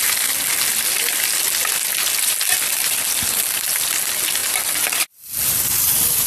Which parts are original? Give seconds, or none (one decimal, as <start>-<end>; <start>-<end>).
0.0-6.3